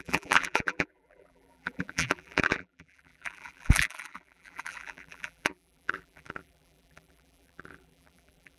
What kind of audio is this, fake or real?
fake